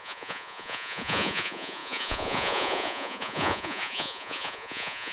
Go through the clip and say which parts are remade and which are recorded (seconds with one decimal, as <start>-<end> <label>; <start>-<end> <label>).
0.0-5.1 remade